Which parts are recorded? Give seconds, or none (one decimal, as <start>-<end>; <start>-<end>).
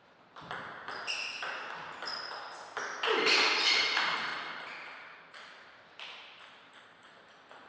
0.0-7.7